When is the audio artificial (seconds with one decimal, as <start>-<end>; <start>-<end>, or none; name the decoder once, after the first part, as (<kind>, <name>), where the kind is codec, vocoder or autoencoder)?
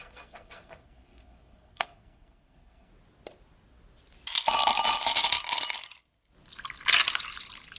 0.0-2.9 (codec, SNAC)